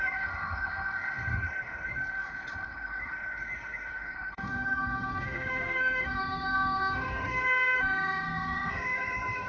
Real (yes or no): no